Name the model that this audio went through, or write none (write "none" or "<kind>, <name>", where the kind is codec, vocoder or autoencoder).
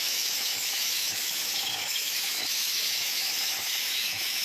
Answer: autoencoder, DAC-VAE